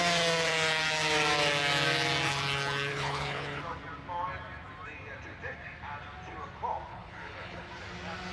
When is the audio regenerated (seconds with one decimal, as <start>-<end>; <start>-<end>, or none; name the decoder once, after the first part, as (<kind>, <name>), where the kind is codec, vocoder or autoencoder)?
2.9-3.6 (codec, HILCodec); 6.9-7.7